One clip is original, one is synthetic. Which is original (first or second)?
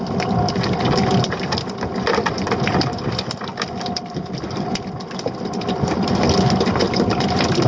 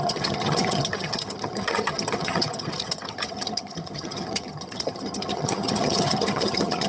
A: first